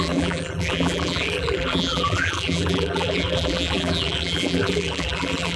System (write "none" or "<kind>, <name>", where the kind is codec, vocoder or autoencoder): vocoder, BigVGAN v2